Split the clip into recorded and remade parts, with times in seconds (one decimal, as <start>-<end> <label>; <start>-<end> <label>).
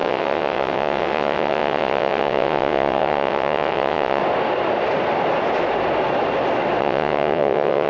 0.0-4.2 remade; 4.2-6.8 recorded; 6.8-7.9 remade